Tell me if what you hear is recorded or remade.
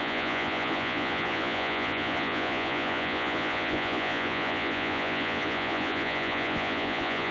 remade